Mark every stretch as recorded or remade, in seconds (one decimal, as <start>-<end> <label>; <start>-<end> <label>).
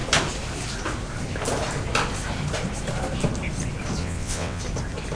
0.0-4.0 recorded; 4.0-4.6 remade; 4.6-5.2 recorded